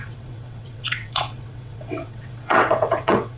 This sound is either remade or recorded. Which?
remade